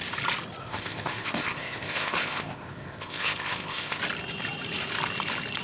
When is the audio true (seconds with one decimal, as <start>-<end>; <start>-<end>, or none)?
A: 0.0-0.6; 4.0-5.6

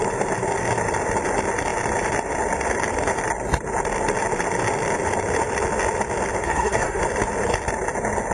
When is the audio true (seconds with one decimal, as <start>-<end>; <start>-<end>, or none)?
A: 0.0-6.4; 7.0-8.3

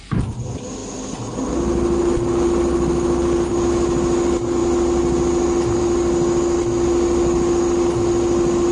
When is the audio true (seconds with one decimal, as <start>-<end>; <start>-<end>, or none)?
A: 0.0-8.7

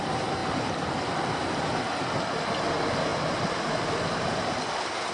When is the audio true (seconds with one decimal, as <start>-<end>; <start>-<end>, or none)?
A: 0.0-5.1

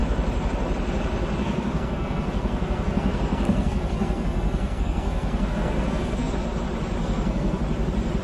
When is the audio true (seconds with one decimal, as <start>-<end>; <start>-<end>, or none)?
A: 0.0-1.4; 6.3-7.0; 7.6-8.2

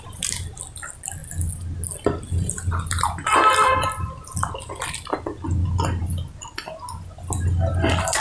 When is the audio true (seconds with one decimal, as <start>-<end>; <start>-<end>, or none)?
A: 0.0-8.2

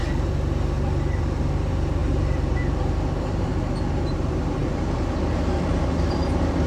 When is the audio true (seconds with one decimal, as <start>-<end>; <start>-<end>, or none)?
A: 0.0-1.2